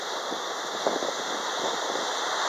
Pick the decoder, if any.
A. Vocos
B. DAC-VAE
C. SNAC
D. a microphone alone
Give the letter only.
D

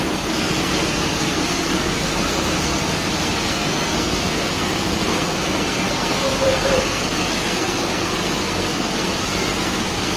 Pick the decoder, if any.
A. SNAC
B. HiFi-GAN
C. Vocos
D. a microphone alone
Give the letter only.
A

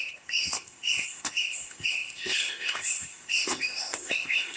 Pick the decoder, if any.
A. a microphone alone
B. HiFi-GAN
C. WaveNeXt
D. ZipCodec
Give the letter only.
D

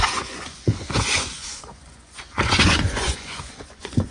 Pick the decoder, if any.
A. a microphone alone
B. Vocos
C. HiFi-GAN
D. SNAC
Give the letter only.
B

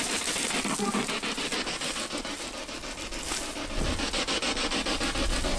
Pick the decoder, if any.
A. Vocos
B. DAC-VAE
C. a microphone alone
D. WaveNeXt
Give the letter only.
C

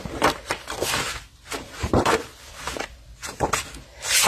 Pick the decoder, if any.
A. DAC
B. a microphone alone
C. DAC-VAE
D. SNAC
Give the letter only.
B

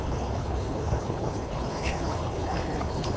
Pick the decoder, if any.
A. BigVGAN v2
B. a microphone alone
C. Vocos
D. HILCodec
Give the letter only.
D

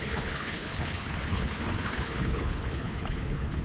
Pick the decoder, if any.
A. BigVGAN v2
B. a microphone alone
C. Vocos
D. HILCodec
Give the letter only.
D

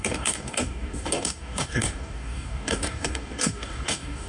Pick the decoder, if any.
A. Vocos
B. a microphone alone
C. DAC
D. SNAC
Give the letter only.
C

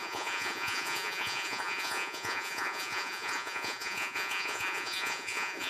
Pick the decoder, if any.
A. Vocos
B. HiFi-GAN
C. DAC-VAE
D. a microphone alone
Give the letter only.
A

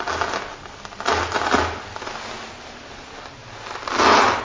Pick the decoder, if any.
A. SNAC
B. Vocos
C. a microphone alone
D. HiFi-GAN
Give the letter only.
C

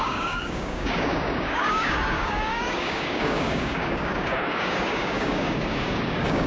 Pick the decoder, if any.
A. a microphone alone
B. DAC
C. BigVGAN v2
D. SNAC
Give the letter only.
B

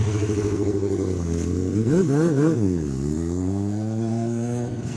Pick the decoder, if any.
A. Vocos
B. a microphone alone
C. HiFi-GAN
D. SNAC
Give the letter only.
D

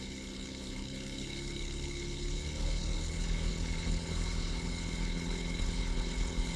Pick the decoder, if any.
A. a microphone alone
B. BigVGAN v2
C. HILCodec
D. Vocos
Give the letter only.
C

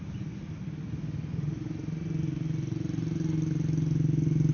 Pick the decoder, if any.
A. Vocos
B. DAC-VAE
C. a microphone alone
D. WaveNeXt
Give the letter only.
C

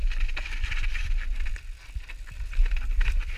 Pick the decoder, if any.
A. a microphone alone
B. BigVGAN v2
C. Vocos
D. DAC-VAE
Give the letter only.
A